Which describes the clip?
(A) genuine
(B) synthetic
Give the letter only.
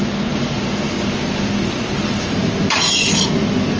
A